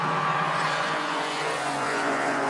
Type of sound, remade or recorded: remade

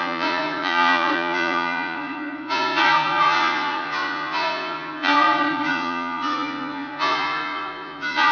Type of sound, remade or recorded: remade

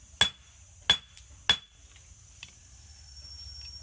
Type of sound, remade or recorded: recorded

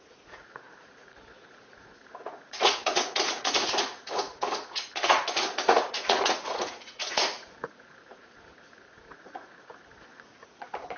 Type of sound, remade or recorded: remade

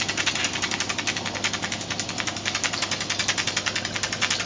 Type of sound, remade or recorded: recorded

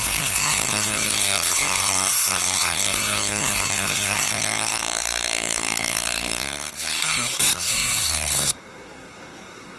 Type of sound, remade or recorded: remade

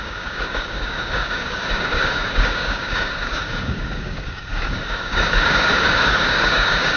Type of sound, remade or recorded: remade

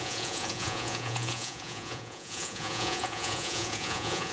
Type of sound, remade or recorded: remade